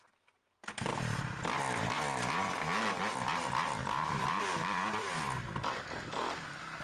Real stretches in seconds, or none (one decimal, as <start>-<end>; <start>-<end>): 0.0-0.9; 2.6-3.8; 5.5-6.8